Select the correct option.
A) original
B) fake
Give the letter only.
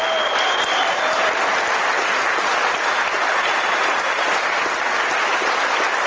A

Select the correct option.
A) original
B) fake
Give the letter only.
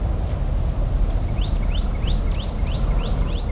A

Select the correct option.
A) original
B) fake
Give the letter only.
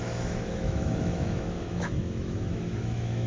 B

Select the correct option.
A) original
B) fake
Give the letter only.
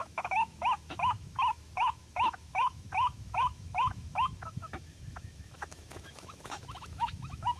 B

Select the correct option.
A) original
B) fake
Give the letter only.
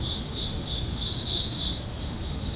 B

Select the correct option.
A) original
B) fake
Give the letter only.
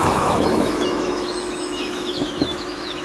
B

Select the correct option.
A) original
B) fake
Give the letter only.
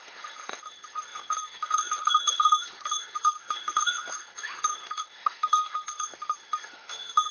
B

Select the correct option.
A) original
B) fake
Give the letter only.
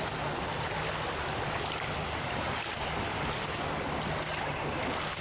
A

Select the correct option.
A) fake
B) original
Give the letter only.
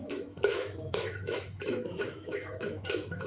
A